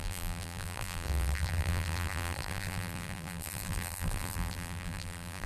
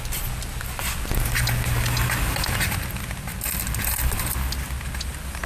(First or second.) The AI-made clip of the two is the first